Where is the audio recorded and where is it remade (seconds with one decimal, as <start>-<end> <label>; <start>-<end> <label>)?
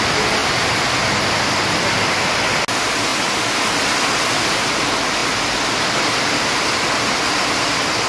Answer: 0.0-0.4 recorded; 0.4-2.1 remade; 2.1-8.1 recorded